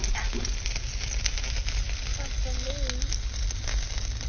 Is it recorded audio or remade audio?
recorded